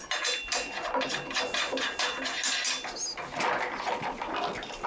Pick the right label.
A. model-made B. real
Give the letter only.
B